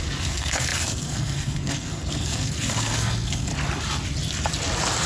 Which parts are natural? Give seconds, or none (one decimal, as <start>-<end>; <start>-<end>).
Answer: 3.5-5.1